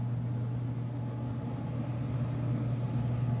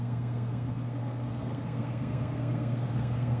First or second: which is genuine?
first